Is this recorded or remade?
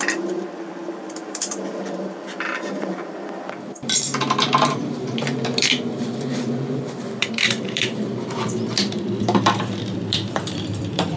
remade